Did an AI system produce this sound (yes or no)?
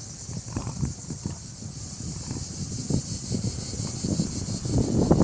no